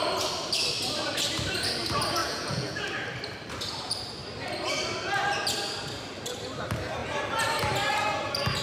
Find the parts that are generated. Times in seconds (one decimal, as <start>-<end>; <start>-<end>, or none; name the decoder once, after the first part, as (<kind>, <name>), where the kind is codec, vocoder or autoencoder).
2.2-2.8 (vocoder, Vocos)

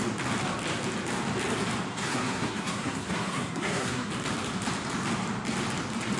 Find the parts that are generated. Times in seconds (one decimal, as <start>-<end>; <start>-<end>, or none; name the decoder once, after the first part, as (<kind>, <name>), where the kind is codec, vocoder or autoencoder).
1.9-4.1 (codec, SNAC)

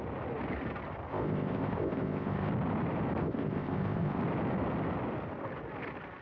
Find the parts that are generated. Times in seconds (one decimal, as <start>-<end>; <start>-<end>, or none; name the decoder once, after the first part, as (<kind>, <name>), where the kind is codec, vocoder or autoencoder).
1.1-2.5 (codec, ZipCodec); 3.2-4.2